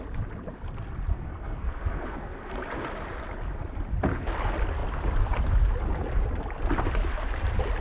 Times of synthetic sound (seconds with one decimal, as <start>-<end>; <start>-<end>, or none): 1.1-2.5